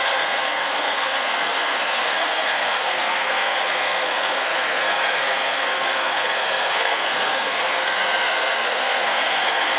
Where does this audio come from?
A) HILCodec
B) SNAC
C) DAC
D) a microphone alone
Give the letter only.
B